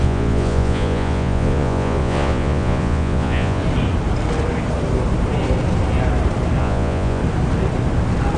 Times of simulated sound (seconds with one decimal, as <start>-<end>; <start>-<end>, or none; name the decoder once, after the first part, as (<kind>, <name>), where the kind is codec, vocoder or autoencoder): 0.0-3.6 (vocoder, Vocos); 6.6-7.2